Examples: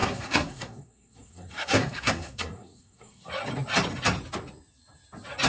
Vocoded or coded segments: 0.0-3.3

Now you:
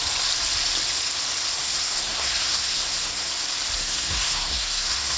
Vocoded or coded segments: 1.6-3.3; 3.8-5.2

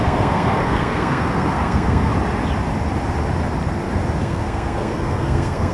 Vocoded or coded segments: 0.0-2.1; 4.2-5.7